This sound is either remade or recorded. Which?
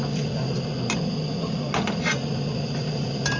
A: recorded